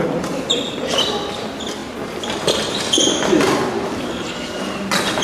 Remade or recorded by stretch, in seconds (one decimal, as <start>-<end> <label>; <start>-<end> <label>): 0.0-5.2 recorded